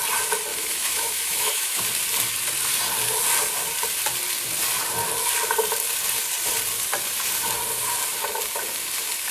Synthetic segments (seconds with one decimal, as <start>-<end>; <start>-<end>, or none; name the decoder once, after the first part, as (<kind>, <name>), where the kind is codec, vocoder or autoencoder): 0.5-1.8 (autoencoder, DAC-VAE)